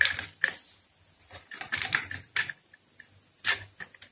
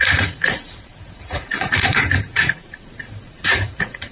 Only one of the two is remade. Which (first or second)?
second